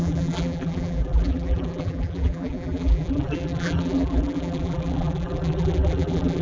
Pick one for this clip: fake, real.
fake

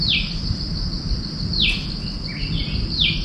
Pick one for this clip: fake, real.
real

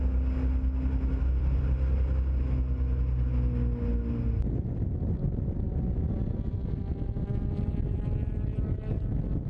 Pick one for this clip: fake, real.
real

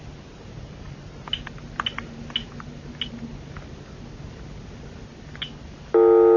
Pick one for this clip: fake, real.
real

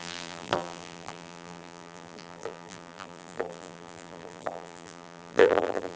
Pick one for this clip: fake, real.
fake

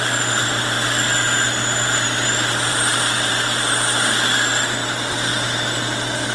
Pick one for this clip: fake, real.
real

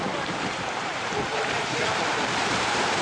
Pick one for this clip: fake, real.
fake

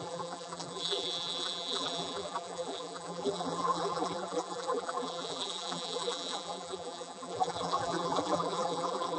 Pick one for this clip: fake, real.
fake